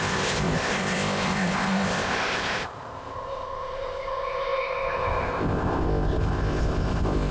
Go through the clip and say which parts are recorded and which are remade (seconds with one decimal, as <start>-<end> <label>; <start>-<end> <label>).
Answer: 0.0-7.3 remade